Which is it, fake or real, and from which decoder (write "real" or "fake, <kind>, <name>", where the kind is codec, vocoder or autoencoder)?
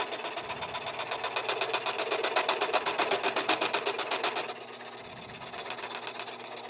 real